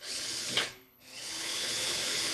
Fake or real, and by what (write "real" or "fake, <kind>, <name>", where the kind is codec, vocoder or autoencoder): fake, codec, HILCodec